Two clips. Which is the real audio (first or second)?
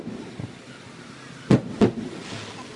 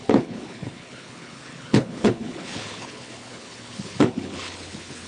first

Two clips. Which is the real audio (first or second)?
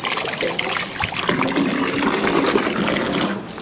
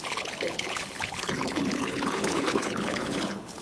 first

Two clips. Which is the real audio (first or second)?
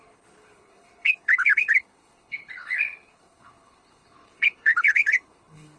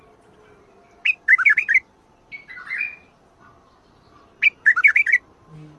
second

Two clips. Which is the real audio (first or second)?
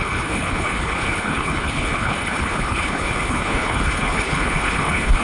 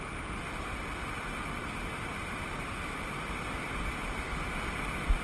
second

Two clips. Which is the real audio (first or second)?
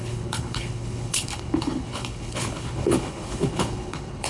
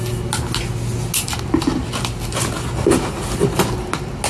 second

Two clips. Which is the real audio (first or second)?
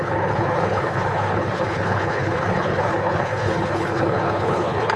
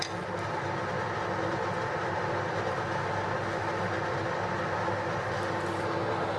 second